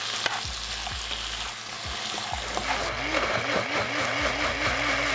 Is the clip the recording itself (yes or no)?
yes